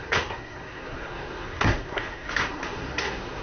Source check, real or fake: fake